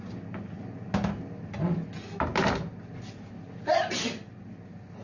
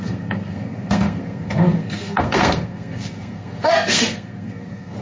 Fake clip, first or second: second